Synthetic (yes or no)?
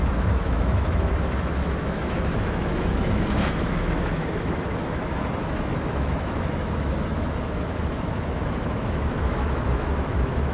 yes